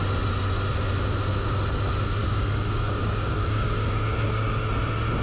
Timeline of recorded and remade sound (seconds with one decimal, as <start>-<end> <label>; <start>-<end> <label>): 0.0-2.2 recorded; 2.2-4.7 remade; 4.7-5.2 recorded